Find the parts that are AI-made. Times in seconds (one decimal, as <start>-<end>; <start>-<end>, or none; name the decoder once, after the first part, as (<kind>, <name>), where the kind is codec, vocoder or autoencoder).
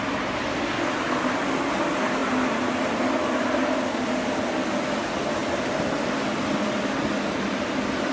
none